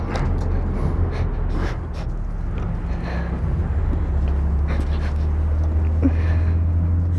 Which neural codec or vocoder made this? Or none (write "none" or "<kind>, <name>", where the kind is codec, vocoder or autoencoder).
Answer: none